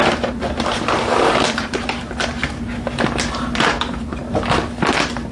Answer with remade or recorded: recorded